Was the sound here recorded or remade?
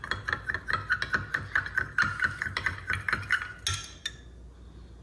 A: recorded